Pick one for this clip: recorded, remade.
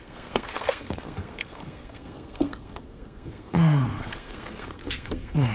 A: remade